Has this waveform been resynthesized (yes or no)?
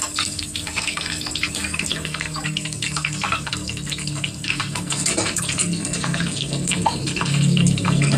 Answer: yes